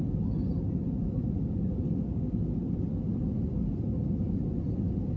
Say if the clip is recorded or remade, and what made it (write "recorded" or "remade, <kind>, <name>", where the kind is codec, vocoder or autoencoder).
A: recorded